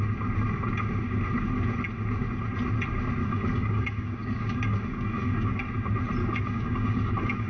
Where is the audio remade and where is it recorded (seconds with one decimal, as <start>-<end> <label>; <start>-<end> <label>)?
0.0-3.2 recorded; 3.2-5.7 remade; 5.7-6.2 recorded; 6.2-7.5 remade